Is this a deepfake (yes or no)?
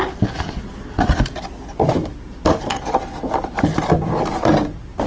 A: no